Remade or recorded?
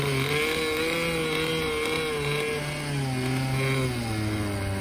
recorded